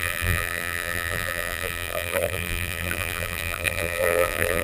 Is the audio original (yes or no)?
no